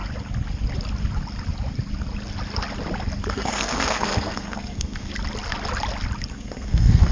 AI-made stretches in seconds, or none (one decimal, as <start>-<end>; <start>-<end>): 3.3-5.1; 6.3-7.1